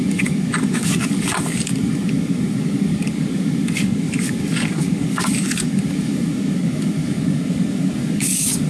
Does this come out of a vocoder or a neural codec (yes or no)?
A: yes